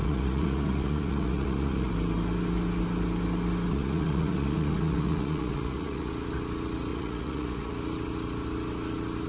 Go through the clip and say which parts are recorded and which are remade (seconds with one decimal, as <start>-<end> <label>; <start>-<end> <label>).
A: 0.0-1.9 remade; 1.9-3.7 recorded; 3.7-6.1 remade; 6.1-6.9 recorded; 6.9-7.7 remade; 7.7-9.3 recorded